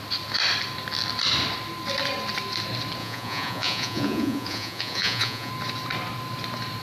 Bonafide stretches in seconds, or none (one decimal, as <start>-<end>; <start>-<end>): 0.0-3.0; 5.5-6.8